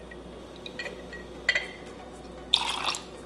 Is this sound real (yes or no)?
yes